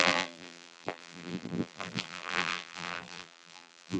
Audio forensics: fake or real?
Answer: fake